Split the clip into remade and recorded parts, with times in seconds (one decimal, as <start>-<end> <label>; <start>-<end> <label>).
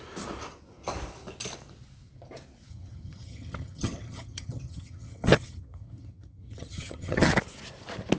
0.0-2.7 recorded; 2.7-7.3 remade; 7.3-8.2 recorded